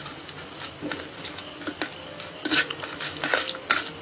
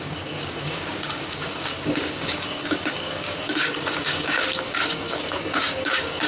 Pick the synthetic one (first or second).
second